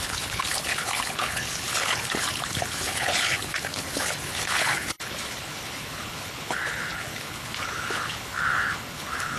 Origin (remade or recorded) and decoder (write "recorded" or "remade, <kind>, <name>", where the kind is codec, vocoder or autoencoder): remade, codec, HILCodec